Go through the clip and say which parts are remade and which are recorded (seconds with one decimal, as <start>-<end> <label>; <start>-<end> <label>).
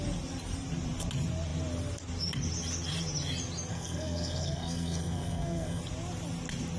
0.0-3.7 recorded; 3.7-5.8 remade; 5.8-6.8 recorded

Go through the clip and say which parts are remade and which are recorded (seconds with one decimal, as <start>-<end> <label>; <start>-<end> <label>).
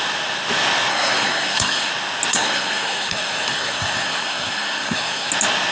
0.0-0.9 recorded; 0.9-1.9 remade; 1.9-2.3 recorded; 2.3-5.3 remade; 5.3-5.7 recorded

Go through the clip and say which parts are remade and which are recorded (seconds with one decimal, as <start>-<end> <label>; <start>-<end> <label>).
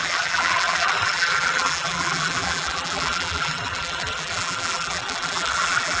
0.0-6.0 remade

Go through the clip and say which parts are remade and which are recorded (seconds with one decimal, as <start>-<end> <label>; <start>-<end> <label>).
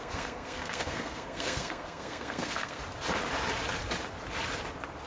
0.0-2.8 remade; 2.8-5.1 recorded